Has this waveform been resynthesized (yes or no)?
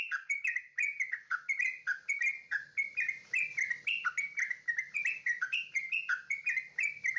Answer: no